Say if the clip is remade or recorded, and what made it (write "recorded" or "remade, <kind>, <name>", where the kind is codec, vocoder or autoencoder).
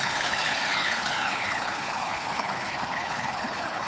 remade, codec, HILCodec